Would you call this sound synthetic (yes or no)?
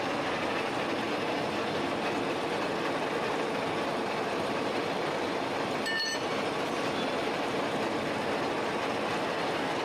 no